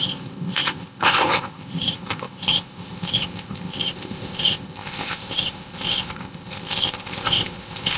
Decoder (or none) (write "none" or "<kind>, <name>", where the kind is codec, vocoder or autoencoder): codec, ZipCodec